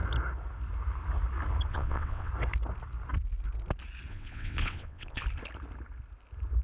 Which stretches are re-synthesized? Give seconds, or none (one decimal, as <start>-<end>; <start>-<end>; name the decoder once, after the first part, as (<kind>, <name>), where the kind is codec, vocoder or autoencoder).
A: 1.7-2.3 (vocoder, WaveNeXt); 4.1-5.2

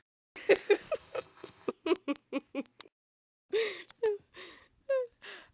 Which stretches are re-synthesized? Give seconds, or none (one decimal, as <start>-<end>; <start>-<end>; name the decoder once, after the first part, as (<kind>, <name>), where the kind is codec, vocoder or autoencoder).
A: 1.0-1.7 (codec, ZipCodec)

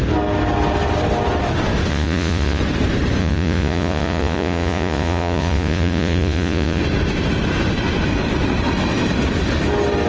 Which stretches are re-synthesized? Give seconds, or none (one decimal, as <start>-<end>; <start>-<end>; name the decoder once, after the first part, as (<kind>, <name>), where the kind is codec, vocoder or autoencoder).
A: 1.9-2.6 (vocoder, Vocos); 3.2-6.8

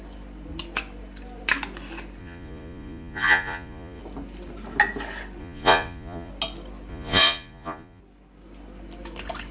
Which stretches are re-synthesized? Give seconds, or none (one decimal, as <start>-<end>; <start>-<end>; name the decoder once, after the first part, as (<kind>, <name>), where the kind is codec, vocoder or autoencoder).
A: 2.2-4.0 (vocoder, Vocos); 5.4-6.3; 6.9-8.0

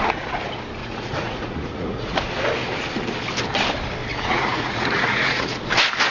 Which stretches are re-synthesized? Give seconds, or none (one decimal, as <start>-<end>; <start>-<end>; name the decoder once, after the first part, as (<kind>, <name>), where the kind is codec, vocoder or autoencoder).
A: 0.8-2.2 (vocoder, Vocos); 4.1-5.6

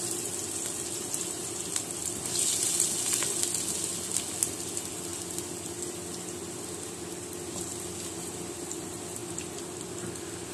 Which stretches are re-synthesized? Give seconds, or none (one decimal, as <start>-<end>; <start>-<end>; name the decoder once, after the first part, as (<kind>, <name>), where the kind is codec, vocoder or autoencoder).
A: none